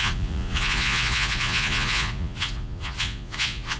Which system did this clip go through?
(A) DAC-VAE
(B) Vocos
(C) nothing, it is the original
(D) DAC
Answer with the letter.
B